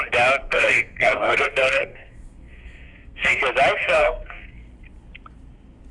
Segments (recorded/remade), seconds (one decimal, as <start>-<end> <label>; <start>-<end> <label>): 0.0-0.4 recorded; 0.4-3.4 remade; 3.4-3.8 recorded; 3.8-4.7 remade; 4.7-5.9 recorded